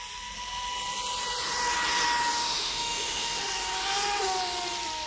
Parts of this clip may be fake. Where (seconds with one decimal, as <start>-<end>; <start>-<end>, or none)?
2.4-3.4